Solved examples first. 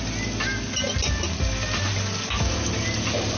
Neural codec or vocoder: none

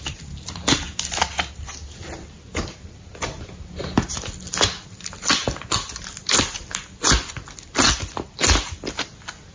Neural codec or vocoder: none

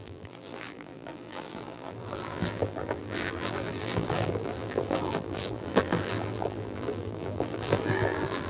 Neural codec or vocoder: vocoder, BigVGAN v2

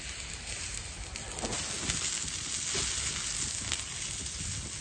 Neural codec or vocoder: none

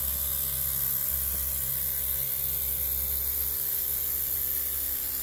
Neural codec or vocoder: none